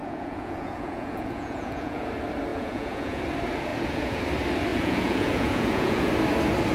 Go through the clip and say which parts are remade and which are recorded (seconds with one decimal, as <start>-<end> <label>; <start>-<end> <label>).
0.0-2.1 remade; 2.1-2.5 recorded; 2.5-3.2 remade; 3.2-3.7 recorded; 3.7-4.2 remade; 4.2-4.7 recorded; 4.7-6.1 remade; 6.1-6.7 recorded